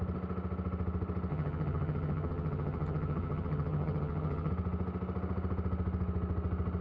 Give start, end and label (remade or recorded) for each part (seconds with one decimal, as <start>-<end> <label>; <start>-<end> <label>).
0.0-1.3 recorded; 1.3-4.5 remade; 4.5-6.8 recorded